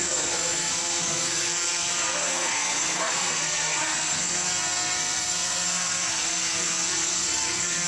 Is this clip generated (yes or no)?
yes